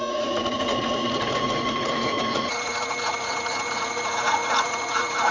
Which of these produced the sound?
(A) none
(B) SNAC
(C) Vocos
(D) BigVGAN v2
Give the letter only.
C